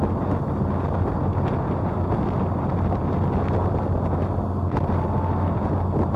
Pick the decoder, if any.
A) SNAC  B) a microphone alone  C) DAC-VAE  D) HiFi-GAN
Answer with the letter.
B